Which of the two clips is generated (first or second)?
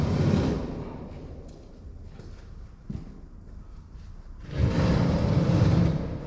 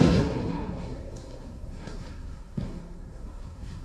second